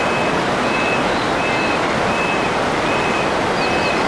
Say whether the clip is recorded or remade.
recorded